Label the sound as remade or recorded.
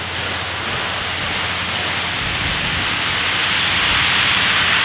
recorded